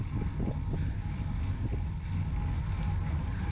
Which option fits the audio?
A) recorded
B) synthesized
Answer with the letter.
A